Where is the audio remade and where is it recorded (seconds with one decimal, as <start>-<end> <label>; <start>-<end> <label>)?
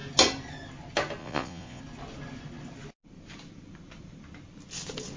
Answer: 0.0-1.2 recorded; 1.2-1.8 remade; 1.8-5.2 recorded